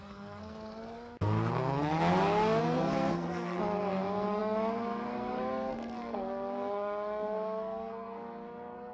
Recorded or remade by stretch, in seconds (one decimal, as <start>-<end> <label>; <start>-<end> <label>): 0.0-2.0 remade; 2.0-2.6 recorded; 2.6-8.9 remade